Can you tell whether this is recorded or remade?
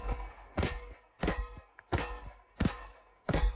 remade